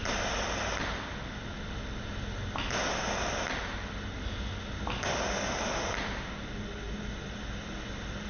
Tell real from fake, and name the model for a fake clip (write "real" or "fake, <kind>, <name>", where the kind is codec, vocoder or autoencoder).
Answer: real